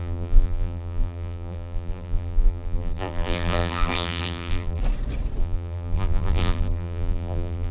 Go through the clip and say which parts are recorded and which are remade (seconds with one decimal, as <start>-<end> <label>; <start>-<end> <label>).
0.0-4.8 remade; 4.8-5.4 recorded; 5.4-7.7 remade